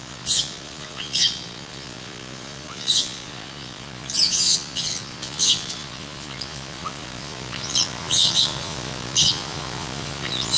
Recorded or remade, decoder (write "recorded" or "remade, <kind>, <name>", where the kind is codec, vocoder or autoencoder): remade, vocoder, Vocos